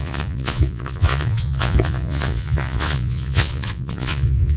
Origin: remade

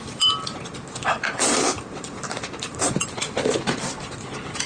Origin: remade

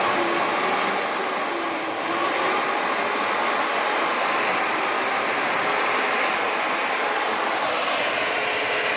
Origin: recorded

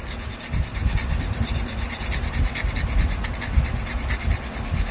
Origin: recorded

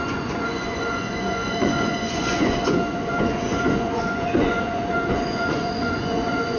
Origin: remade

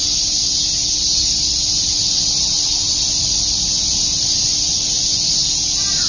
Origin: recorded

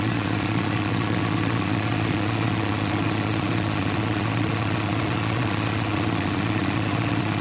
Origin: remade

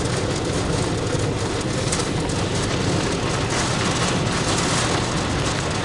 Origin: recorded